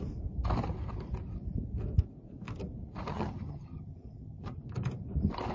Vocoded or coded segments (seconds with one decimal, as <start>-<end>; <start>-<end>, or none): 3.1-4.6